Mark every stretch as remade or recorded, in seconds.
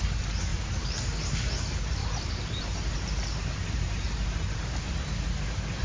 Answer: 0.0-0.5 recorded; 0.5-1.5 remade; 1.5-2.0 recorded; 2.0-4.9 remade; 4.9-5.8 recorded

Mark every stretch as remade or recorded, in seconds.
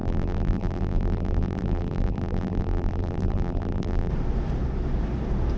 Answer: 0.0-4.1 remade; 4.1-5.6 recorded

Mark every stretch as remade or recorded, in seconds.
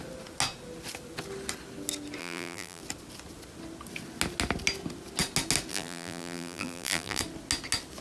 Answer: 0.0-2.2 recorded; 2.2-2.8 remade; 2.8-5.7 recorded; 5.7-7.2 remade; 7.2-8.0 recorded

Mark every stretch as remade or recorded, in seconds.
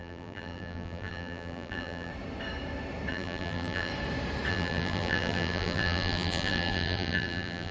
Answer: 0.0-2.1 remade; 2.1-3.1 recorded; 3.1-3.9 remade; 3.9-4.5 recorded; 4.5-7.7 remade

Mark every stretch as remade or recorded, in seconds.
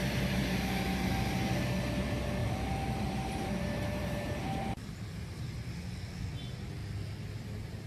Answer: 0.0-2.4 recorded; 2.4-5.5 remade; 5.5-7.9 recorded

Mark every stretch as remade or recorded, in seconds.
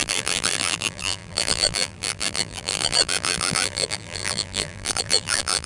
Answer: 0.0-5.7 remade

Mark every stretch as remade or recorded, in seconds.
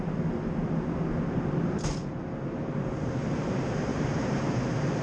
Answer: 0.0-3.9 recorded; 3.9-4.6 remade; 4.6-5.0 recorded